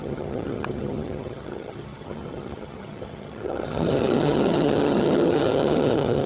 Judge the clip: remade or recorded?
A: remade